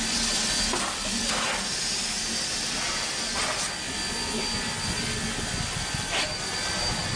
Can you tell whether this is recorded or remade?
recorded